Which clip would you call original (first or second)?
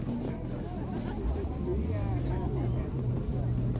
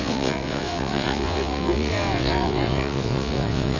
first